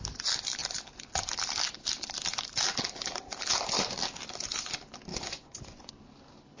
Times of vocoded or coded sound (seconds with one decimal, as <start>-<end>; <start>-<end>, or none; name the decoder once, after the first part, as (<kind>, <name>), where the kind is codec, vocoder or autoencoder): 5.1-5.9 (vocoder, Vocos)